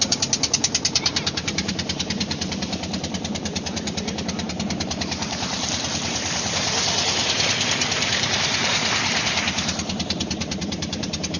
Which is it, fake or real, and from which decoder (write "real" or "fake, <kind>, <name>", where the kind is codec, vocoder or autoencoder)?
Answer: fake, vocoder, BigVGAN v2